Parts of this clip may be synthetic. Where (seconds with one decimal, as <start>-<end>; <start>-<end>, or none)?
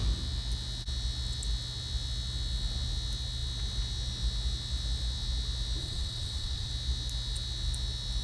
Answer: 5.8-6.7